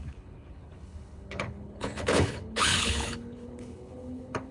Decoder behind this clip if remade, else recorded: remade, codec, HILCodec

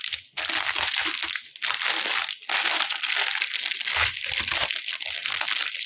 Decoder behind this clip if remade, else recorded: recorded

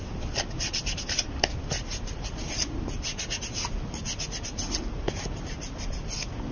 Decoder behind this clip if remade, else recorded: recorded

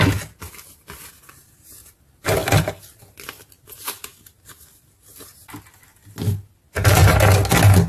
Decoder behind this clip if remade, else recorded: recorded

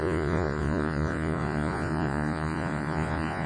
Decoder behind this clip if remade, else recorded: remade, vocoder, Vocos